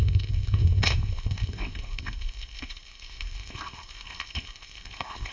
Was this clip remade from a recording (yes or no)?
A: yes